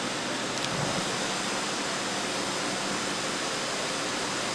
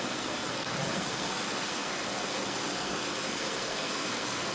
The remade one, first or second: second